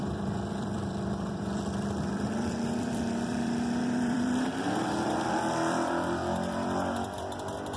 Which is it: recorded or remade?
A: remade